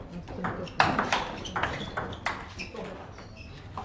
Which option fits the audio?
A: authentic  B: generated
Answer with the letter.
A